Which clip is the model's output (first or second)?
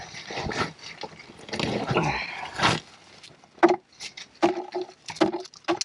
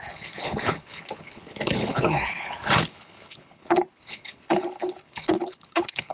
second